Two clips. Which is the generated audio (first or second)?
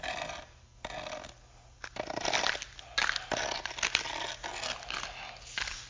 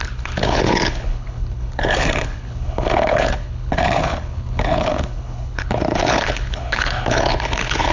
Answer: second